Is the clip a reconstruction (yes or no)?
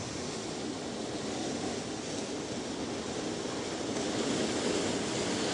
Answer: no